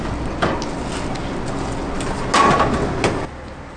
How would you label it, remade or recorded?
recorded